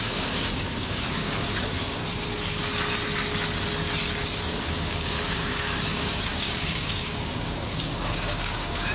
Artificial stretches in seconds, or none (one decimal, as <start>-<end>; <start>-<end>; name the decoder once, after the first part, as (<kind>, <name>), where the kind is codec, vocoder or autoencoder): 0.0-2.0 (codec, DAC); 4.5-8.9

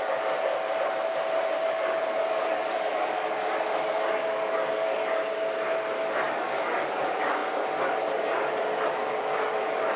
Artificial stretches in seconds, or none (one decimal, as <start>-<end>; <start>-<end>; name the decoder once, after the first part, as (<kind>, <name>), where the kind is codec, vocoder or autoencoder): 0.0-0.5 (codec, DAC); 1.7-5.2; 6.3-10.0

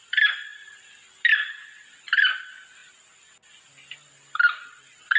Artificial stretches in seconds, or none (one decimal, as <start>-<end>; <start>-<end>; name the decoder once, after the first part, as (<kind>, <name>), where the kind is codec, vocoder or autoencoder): none

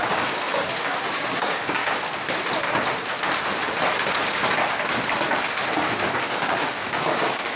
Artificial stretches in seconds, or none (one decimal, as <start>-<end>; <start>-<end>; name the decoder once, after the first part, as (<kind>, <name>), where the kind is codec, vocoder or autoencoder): 0.0-1.8 (codec, DAC); 5.9-7.6

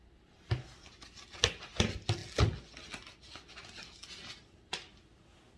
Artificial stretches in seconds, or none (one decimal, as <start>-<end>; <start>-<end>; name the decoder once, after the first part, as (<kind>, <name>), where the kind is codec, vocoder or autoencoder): none

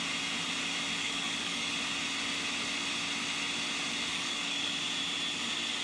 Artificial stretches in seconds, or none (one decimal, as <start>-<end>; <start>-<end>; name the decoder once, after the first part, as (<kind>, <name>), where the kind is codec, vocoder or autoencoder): 1.0-1.7 (codec, DAC); 4.1-4.7

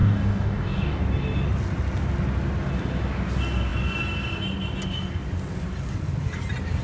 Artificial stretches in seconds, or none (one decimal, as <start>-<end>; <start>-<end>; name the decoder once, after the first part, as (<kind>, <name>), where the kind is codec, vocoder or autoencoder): 0.0-1.0 (codec, DAC)

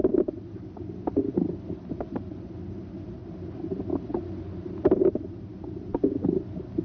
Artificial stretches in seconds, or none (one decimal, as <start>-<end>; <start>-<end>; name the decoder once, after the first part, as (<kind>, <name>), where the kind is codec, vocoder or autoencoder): none